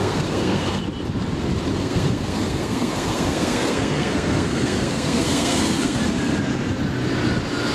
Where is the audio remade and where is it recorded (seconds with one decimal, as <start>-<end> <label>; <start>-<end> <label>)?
0.0-0.8 remade; 0.8-1.7 recorded; 1.7-6.0 remade; 6.0-7.7 recorded